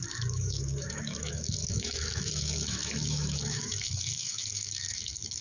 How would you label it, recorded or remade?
remade